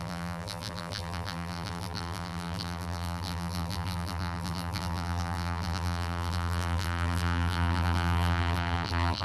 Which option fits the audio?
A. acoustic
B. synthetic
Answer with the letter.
B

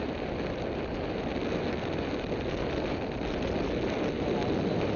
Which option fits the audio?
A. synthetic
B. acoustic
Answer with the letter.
B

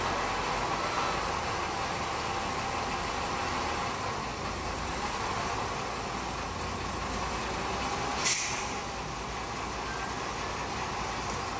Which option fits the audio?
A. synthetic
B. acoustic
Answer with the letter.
B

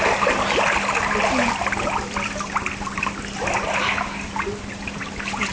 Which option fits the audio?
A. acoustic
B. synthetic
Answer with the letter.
A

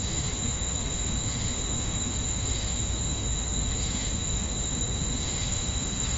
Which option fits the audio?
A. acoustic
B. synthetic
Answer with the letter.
B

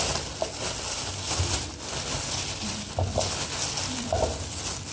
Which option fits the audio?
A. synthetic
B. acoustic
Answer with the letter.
B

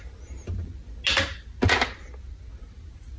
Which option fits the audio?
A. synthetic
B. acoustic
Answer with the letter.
B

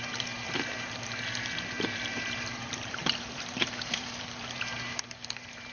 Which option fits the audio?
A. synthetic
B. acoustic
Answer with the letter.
A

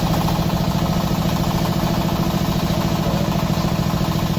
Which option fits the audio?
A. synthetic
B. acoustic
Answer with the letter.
B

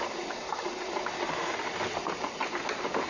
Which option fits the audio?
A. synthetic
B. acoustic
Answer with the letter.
B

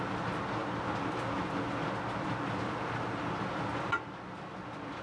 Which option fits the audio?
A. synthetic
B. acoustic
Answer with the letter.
B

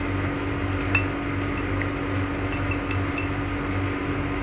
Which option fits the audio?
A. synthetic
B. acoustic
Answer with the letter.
B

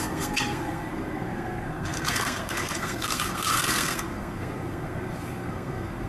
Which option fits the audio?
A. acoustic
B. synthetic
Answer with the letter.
B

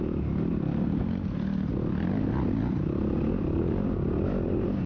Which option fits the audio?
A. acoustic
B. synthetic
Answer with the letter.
A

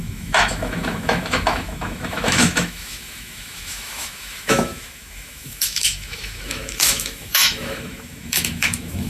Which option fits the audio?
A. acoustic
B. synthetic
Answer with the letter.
B